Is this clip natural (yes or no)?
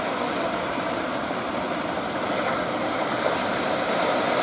yes